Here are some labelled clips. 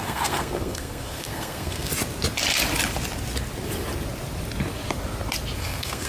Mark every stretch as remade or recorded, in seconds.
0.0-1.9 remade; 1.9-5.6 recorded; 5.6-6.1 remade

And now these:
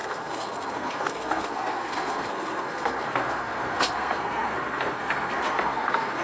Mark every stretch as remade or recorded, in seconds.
0.0-6.2 remade